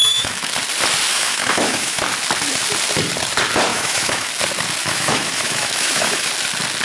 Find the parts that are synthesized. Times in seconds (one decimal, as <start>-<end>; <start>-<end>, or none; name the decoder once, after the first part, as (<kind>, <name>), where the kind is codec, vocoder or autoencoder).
0.0-0.5 (autoencoder, DAC-VAE); 1.1-2.0; 3.7-4.3; 4.8-6.3

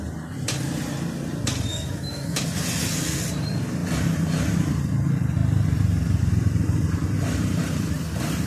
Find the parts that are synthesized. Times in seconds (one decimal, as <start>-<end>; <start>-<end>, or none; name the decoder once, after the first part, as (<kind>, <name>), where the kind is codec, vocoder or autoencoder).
1.7-2.4 (autoencoder, DAC-VAE)

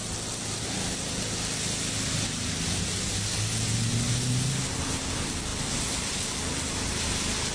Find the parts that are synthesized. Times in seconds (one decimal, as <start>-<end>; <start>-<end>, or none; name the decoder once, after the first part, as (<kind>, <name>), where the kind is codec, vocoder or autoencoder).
none